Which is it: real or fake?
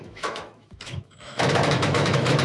fake